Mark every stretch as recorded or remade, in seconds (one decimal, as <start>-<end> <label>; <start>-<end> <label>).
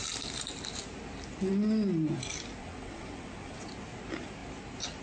0.0-2.6 recorded; 2.6-3.7 remade; 3.7-5.0 recorded